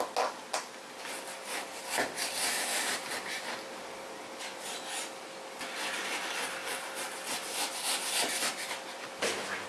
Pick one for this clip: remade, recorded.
recorded